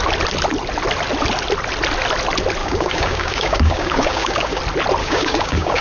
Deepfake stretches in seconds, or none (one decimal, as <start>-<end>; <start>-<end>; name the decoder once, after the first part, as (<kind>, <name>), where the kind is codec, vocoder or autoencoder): 2.6-4.6 (codec, DAC); 5.0-5.8